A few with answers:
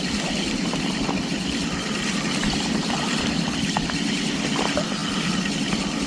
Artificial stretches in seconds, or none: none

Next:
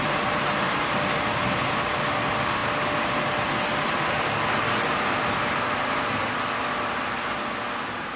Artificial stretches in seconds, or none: none

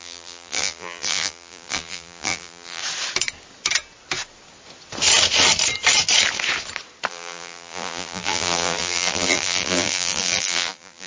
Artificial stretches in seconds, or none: 0.0-2.8 (vocoder, BigVGAN v2); 7.1-11.1